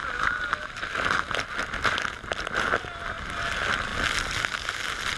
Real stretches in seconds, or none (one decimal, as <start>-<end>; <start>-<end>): 0.0-5.2